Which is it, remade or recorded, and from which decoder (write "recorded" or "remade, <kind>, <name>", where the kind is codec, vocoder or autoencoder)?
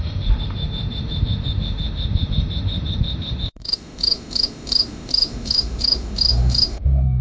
remade, autoencoder, DAC-VAE